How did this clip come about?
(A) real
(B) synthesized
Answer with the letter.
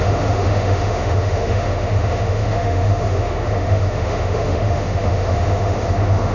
B